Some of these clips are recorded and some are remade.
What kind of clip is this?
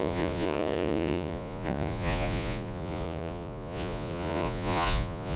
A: remade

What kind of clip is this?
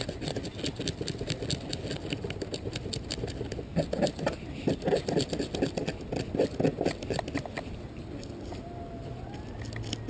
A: recorded